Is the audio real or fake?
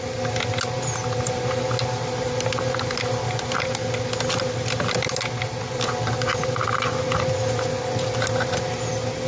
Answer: real